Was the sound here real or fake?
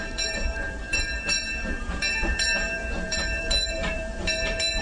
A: fake